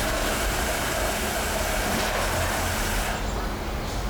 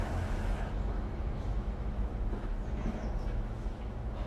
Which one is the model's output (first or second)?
second